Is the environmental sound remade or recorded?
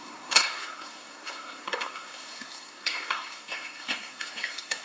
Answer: remade